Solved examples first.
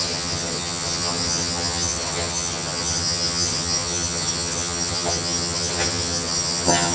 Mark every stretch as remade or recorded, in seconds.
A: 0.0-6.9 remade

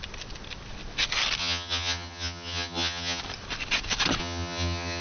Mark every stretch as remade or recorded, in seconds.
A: 0.0-1.4 recorded; 1.4-3.2 remade; 3.2-4.2 recorded; 4.2-5.0 remade

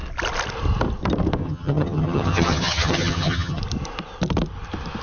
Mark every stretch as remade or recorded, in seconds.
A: 0.0-1.4 recorded; 1.4-3.6 remade; 3.6-5.0 recorded

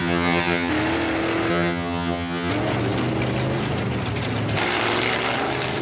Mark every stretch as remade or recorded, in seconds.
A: 0.0-0.7 remade; 0.7-1.5 recorded; 1.5-2.5 remade; 2.5-5.8 recorded

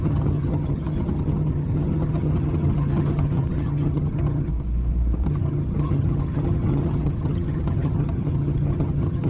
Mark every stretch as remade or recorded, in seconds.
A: 0.0-4.5 remade; 4.5-5.3 recorded; 5.3-9.3 remade

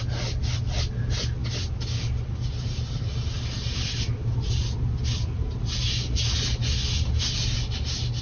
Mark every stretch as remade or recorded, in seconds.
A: 0.0-8.2 recorded

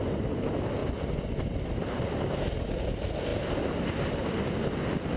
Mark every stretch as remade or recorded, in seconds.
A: 0.0-5.2 recorded